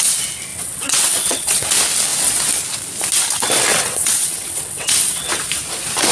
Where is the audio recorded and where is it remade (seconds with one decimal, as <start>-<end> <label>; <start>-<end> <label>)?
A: 0.0-0.5 recorded; 0.5-1.7 remade; 1.7-3.7 recorded; 3.7-5.3 remade; 5.3-6.1 recorded

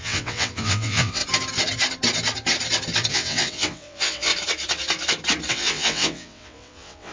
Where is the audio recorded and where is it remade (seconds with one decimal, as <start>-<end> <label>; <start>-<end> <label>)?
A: 0.0-1.2 remade; 1.2-3.1 recorded; 3.1-4.3 remade; 4.3-5.5 recorded; 5.5-7.1 remade

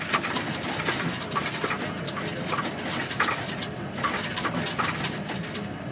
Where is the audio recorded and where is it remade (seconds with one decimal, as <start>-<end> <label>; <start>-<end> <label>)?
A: 0.0-5.9 recorded

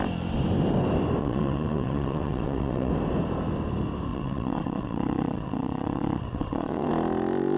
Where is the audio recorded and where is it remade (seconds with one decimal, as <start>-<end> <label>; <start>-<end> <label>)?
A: 0.0-1.2 recorded; 1.2-2.9 remade; 2.9-4.1 recorded; 4.1-6.9 remade; 6.9-7.6 recorded

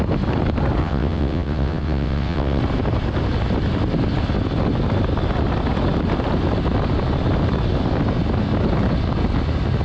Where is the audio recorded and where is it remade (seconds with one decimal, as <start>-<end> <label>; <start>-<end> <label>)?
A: 0.0-0.8 recorded; 0.8-2.6 remade; 2.6-9.8 recorded

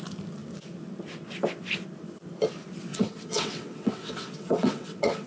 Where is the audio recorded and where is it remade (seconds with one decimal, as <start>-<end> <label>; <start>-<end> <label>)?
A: 0.0-2.9 recorded; 2.9-5.3 remade